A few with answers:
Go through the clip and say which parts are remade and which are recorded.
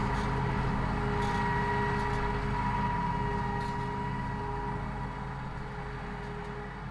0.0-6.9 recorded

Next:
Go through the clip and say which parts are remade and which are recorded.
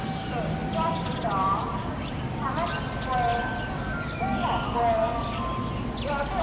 0.0-6.4 recorded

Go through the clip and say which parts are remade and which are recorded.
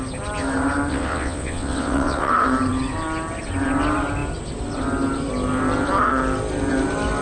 0.0-0.9 recorded; 0.9-2.3 remade; 2.3-7.2 recorded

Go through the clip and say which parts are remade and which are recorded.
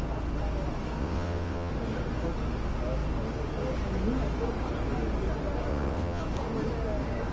0.0-1.0 recorded; 1.0-1.7 remade; 1.7-5.7 recorded; 5.7-6.2 remade; 6.2-7.3 recorded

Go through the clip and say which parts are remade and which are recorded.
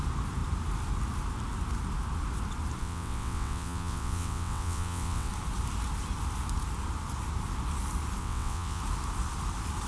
0.0-2.8 recorded; 2.8-5.3 remade; 5.3-8.2 recorded; 8.2-8.8 remade; 8.8-9.9 recorded